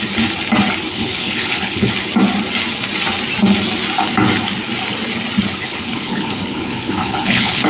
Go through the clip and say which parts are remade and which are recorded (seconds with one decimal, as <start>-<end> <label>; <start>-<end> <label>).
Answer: 0.0-0.9 recorded; 0.9-1.9 remade; 1.9-5.5 recorded; 5.5-7.7 remade